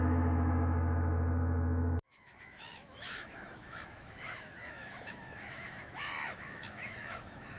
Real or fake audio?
fake